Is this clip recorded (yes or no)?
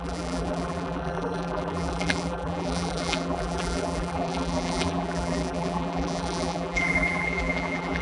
no